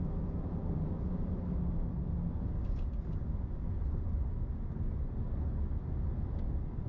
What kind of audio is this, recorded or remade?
recorded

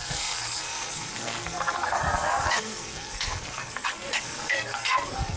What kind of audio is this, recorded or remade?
remade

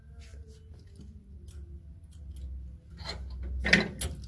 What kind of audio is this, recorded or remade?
recorded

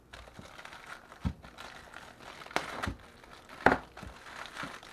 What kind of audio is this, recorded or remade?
recorded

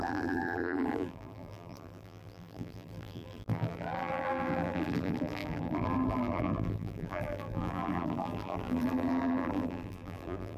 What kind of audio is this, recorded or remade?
remade